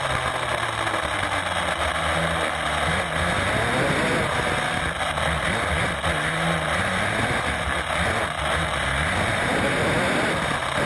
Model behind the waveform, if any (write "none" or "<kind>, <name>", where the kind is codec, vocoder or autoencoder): none